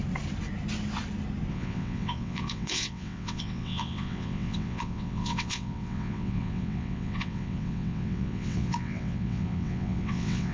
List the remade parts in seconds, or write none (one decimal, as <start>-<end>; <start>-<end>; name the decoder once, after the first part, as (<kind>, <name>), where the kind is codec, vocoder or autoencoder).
1.5-10.5 (vocoder, WaveNeXt)